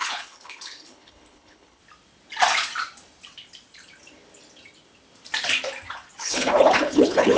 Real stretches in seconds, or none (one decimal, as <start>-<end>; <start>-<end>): 1.8-6.2